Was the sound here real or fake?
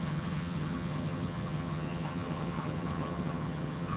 fake